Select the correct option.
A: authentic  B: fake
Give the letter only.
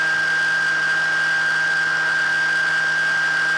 A